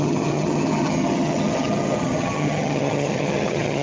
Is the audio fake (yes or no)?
yes